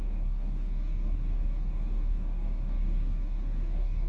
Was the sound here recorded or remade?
remade